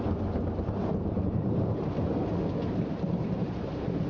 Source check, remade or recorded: remade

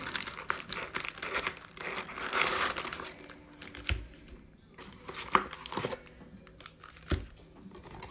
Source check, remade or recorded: recorded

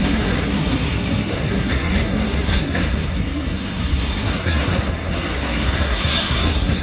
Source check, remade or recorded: remade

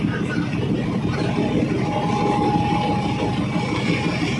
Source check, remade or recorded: recorded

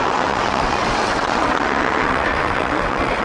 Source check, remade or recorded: remade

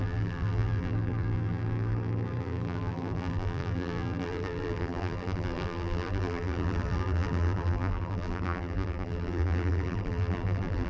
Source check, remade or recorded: remade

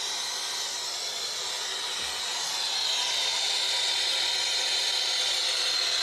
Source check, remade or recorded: recorded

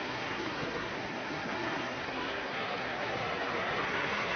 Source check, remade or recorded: remade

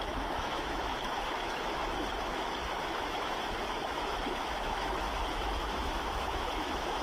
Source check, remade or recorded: remade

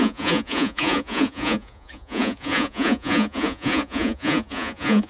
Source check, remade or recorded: remade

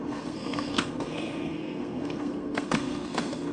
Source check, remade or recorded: remade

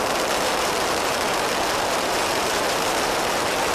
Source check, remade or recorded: remade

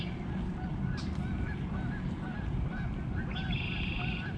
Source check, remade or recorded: recorded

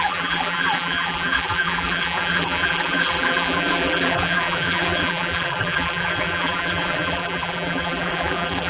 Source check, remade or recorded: remade